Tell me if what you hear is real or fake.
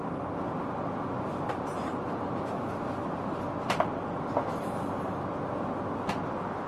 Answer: real